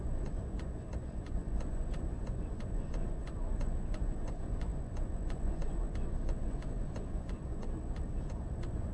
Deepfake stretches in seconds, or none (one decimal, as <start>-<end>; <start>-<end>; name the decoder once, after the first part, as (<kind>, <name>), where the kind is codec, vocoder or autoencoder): 0.0-8.9 (vocoder, Vocos)